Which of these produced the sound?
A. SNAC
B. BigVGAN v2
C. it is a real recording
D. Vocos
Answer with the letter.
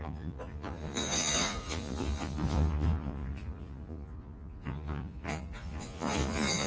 D